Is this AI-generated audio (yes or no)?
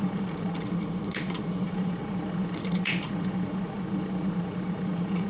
yes